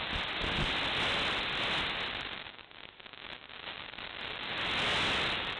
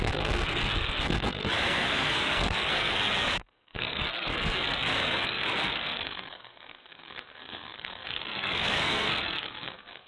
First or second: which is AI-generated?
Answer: second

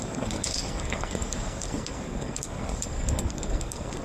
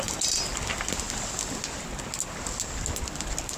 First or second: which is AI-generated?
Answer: first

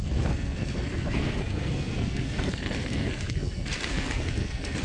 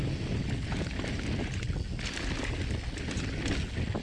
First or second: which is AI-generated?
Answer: first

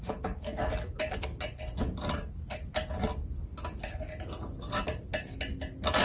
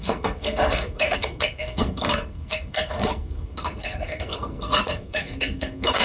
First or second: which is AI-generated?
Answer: second